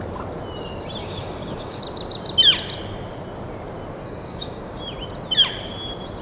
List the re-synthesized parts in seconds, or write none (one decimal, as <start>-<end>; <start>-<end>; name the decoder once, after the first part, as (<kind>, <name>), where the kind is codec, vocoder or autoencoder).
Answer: 1.0-1.8 (codec, DAC); 4.0-4.8